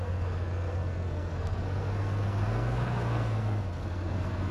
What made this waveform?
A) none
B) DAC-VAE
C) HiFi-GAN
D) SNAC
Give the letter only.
D